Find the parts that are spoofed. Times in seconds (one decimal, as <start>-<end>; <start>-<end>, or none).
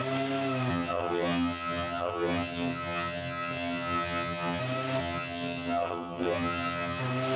0.7-4.6; 5.0-7.0